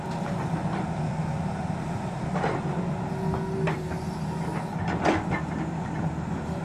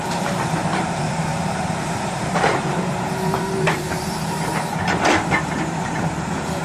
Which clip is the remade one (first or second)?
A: second